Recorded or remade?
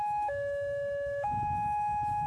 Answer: remade